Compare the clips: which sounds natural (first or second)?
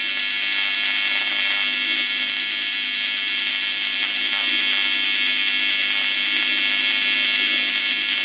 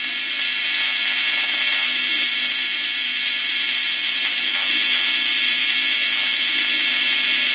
first